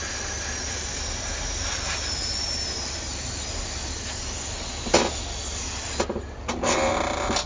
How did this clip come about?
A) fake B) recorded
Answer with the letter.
B